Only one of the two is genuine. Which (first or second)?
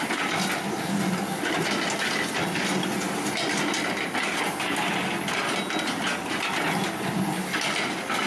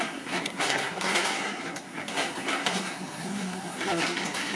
first